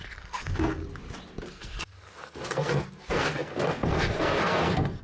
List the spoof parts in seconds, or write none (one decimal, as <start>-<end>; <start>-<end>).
0.0-0.8; 1.5-5.0